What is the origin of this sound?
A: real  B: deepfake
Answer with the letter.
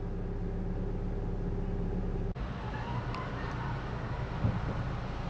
A